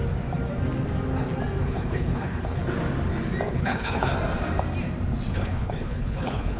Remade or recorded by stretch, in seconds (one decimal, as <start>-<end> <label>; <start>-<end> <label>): 0.0-1.6 recorded; 1.6-2.6 remade; 2.6-3.5 recorded; 3.5-4.1 remade; 4.1-5.3 recorded; 5.3-6.6 remade